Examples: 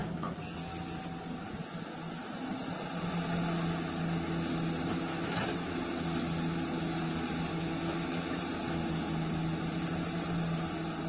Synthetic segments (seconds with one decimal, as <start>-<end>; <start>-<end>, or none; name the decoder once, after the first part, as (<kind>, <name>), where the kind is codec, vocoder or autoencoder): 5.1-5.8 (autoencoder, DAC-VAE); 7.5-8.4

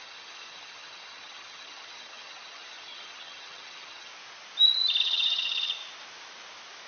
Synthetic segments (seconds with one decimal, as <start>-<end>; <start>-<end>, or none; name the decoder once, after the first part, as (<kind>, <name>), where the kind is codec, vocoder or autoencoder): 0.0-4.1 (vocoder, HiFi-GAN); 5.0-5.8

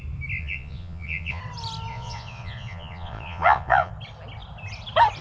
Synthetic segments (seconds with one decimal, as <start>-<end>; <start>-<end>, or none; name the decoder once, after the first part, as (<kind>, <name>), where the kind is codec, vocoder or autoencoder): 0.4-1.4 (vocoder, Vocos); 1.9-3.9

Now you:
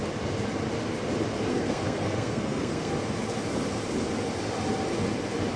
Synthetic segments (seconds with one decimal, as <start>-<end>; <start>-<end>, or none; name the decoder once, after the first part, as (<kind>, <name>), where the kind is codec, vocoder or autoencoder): 1.5-2.9 (codec, SNAC)

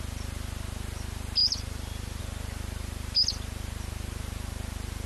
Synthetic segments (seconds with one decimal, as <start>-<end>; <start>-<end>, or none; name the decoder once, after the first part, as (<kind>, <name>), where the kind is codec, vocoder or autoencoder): 1.4-2.2 (vocoder, BigVGAN v2)

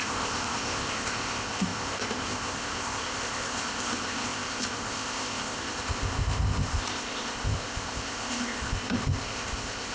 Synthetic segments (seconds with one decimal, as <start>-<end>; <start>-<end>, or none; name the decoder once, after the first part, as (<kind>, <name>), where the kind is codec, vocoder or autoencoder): 0.0-9.9 (codec, ZipCodec)

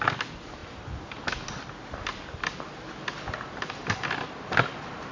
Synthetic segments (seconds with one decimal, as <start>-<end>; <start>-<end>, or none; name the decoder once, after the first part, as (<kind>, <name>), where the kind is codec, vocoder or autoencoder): none

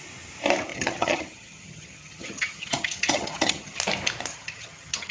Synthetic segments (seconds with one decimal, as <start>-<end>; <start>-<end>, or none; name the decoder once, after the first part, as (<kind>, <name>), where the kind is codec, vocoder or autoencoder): 0.7-3.8 (vocoder, HiFi-GAN); 4.3-5.1